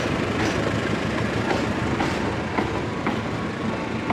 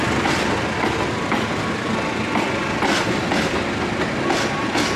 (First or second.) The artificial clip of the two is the first